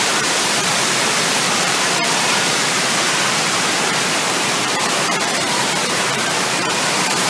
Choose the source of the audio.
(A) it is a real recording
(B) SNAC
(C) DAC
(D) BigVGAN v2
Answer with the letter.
D